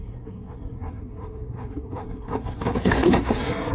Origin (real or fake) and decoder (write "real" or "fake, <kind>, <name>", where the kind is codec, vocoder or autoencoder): fake, codec, SNAC